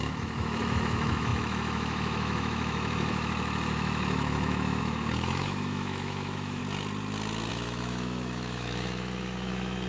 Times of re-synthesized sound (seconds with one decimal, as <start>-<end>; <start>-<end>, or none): 0.0-6.6; 7.5-9.9